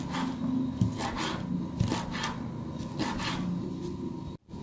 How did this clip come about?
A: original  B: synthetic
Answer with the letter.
A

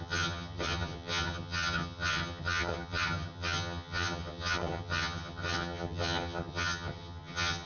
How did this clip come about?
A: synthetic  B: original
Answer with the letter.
A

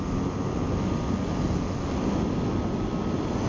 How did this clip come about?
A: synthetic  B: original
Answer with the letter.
B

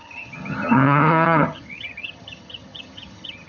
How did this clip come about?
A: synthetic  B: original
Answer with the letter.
A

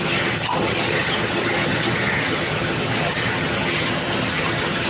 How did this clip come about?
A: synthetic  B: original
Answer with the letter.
A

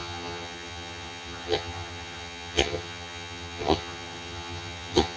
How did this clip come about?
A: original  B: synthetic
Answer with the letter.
B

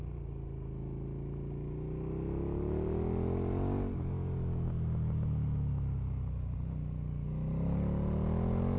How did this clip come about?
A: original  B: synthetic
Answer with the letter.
A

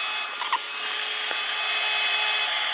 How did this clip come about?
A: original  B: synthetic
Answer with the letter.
A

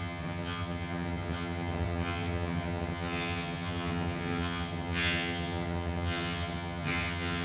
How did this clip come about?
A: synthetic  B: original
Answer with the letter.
A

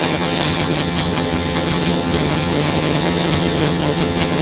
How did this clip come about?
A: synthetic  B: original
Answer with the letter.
A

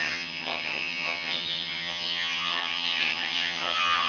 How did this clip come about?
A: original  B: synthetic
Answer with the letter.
B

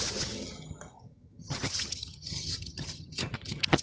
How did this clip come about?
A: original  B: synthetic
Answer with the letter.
B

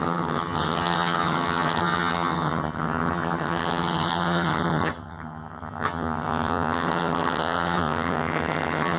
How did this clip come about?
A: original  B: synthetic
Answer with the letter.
B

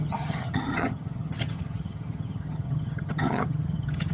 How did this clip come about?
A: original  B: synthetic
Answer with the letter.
B